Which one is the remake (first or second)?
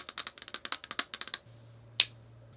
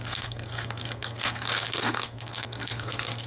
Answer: second